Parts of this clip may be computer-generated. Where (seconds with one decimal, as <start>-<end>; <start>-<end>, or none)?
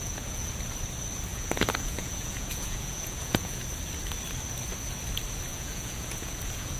0.0-0.5; 1.3-3.6; 5.5-6.8